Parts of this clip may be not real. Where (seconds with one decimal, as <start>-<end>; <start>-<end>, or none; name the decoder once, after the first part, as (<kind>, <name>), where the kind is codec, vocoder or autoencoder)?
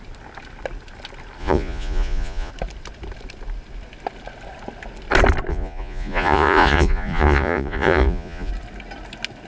1.4-2.5 (vocoder, Vocos); 5.5-8.5